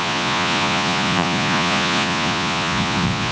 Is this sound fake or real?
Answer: fake